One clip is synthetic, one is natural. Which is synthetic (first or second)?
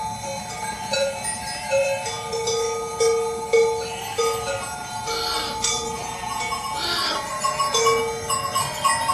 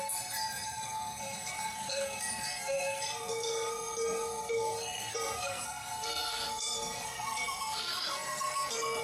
second